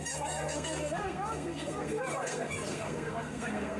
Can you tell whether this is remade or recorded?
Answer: remade